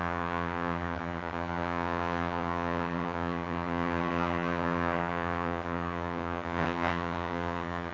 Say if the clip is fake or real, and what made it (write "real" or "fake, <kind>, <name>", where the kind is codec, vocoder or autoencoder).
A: fake, vocoder, HiFi-GAN